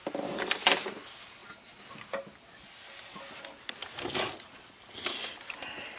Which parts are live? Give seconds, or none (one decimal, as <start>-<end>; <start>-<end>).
0.0-6.0